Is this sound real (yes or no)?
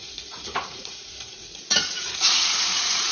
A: no